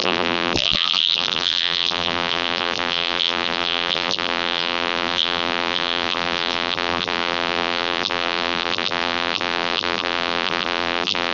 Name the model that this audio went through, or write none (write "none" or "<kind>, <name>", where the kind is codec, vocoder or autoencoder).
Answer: vocoder, BigVGAN v2